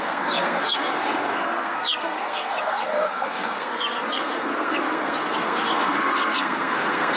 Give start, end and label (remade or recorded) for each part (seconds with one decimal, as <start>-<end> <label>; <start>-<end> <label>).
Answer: 0.0-7.2 remade